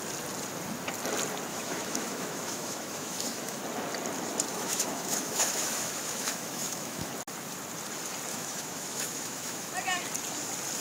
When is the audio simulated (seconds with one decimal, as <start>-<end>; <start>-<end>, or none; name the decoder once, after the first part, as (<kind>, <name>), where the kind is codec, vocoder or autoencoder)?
1.5-3.6 (autoencoder, DAC-VAE); 4.5-7.1; 8.3-9.7